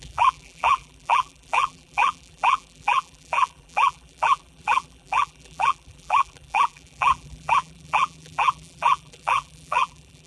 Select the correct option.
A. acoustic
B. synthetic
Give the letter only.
B